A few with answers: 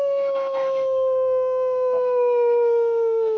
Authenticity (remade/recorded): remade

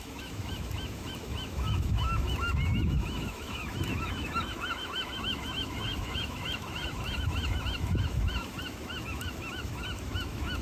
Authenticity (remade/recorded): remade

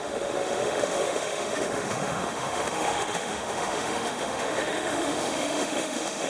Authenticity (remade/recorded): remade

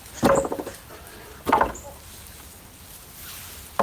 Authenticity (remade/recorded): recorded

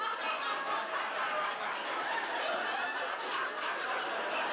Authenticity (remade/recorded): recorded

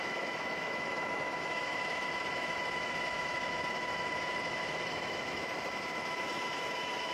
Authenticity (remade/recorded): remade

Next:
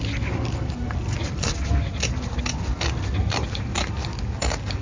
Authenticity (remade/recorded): recorded